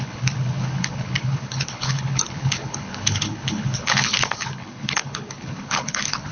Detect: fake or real fake